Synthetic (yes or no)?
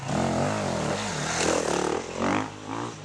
no